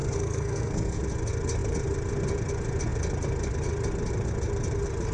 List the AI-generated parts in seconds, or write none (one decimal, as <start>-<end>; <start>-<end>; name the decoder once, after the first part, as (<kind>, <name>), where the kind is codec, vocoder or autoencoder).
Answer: 0.0-1.0 (codec, SNAC)